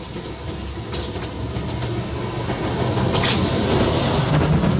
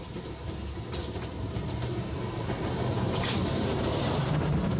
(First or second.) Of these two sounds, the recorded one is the first